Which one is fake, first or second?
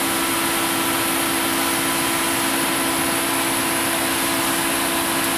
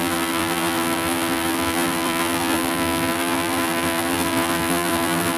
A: second